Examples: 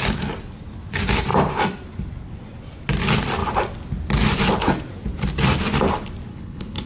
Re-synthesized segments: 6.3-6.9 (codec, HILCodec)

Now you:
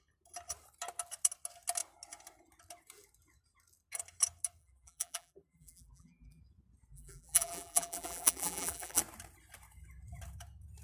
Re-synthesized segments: 4.6-6.4 (vocoder, BigVGAN v2); 6.9-9.0

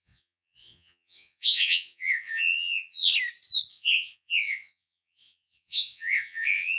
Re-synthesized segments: 0.0-3.1 (vocoder, Vocos); 3.7-6.8

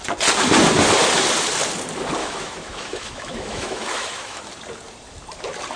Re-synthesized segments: 2.2-4.4 (autoencoder, DAC-VAE)

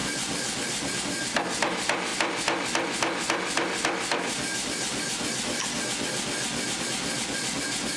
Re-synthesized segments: none

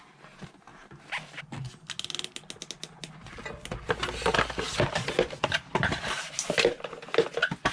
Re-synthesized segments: none

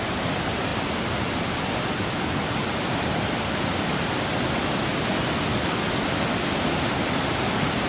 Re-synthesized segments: 0.7-1.4 (vocoder, BigVGAN v2); 2.6-4.6; 5.5-6.5

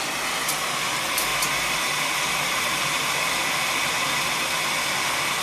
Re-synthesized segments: none